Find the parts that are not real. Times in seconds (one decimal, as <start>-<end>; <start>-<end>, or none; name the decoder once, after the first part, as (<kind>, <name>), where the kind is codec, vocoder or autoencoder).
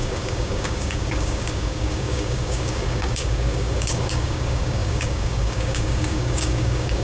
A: 0.0-7.0 (codec, DAC)